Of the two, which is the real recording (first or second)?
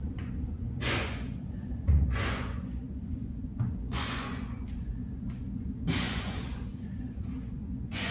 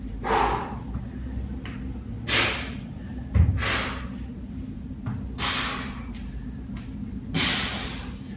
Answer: second